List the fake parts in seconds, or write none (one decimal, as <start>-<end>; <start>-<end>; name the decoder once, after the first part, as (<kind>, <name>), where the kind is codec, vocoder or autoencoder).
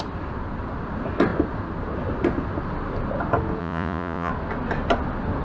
3.6-4.3 (vocoder, Vocos)